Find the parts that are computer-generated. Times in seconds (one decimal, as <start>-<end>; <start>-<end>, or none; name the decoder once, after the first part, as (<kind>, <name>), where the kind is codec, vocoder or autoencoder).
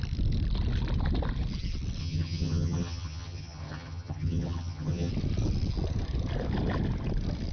2.0-5.1 (vocoder, HiFi-GAN)